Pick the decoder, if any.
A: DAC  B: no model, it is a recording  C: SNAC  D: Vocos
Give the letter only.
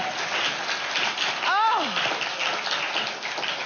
B